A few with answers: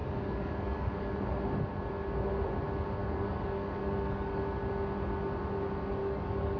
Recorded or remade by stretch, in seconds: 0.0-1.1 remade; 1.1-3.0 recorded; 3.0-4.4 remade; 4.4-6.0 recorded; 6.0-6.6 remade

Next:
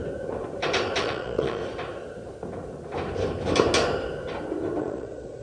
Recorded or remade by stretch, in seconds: 0.0-1.0 recorded; 1.0-1.6 remade; 1.6-4.8 recorded; 4.8-5.4 remade